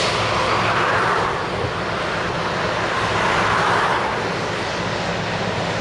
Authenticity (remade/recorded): recorded